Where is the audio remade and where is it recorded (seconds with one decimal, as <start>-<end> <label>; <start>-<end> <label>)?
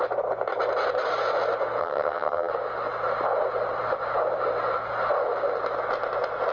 0.0-1.8 recorded; 1.8-2.5 remade; 2.5-6.5 recorded